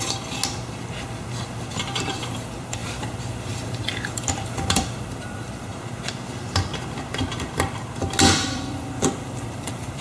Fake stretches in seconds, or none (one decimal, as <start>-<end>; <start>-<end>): 0.0-0.4; 1.7-5.7; 8.4-10.0